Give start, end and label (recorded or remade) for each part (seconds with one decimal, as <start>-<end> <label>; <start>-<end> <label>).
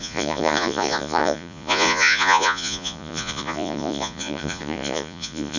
0.0-5.6 remade